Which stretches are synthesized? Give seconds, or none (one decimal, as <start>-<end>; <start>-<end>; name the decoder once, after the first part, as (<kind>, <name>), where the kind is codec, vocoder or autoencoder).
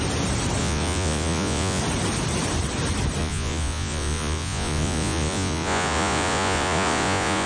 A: 0.6-1.8 (vocoder, Vocos); 3.2-7.5